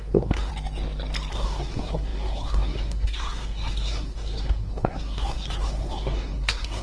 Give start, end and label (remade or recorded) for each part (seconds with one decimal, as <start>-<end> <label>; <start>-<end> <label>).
0.0-0.5 remade; 0.5-1.3 recorded; 1.3-6.8 remade